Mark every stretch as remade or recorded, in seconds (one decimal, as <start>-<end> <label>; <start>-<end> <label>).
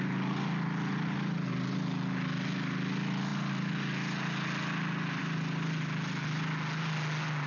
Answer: 0.0-7.5 recorded